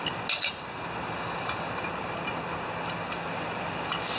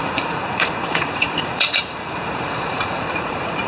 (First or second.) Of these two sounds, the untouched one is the first